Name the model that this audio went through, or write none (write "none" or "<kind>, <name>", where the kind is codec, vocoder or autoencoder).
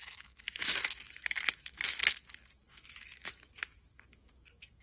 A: autoencoder, DAC-VAE